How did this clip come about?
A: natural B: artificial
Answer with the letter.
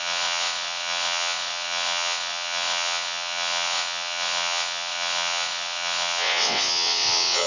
B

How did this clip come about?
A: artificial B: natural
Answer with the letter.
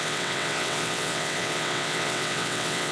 A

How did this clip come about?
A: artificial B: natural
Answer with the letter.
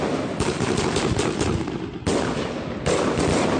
B